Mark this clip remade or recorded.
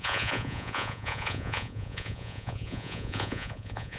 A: remade